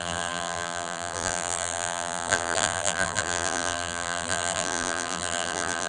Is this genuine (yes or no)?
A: no